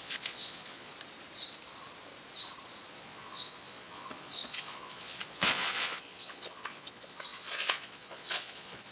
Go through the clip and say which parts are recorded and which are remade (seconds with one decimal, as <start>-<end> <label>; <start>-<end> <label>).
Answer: 0.0-0.9 remade; 0.9-2.9 recorded; 2.9-8.9 remade